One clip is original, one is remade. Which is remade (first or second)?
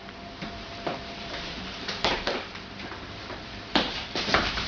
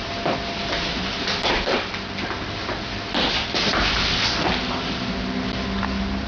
first